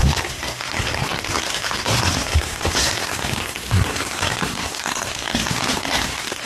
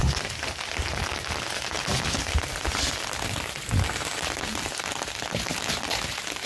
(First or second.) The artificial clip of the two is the first